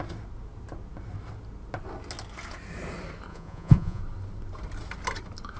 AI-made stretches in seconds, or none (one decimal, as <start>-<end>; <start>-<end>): 3.3-4.0

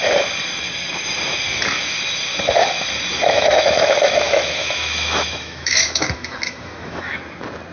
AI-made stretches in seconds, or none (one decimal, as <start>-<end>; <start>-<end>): 3.1-7.1

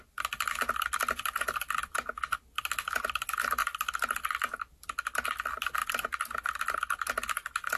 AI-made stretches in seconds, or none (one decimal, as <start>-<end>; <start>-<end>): none